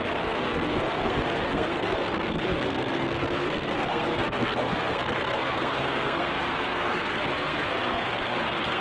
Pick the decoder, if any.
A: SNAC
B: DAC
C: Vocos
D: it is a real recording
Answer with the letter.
A